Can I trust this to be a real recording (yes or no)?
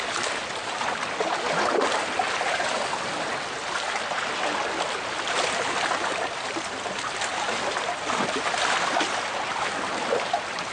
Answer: yes